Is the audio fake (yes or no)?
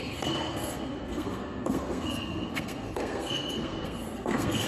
yes